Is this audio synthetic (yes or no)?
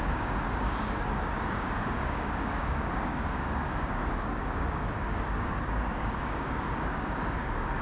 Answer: yes